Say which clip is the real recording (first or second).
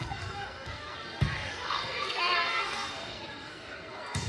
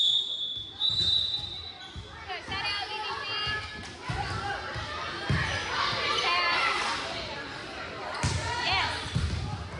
second